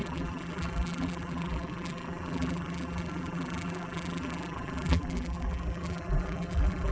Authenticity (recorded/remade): remade